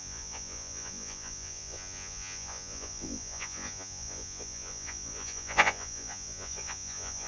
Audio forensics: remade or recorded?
remade